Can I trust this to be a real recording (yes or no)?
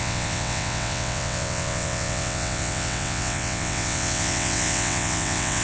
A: no